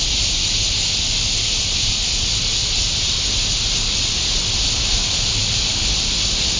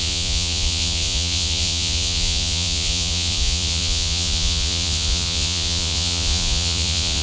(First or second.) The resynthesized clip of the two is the second